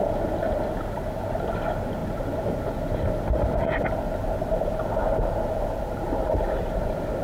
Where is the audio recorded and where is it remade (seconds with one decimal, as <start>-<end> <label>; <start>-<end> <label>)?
0.0-7.2 recorded